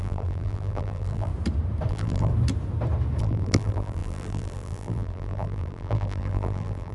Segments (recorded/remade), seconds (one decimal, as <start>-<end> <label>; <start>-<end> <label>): 0.0-1.3 remade; 1.3-1.9 recorded; 1.9-2.3 remade; 2.3-3.2 recorded; 3.2-6.9 remade